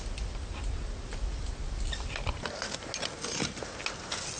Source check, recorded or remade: recorded